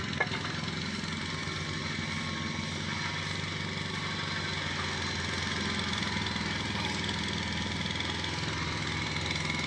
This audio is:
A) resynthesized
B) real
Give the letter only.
B